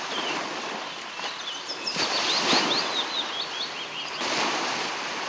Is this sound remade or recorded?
recorded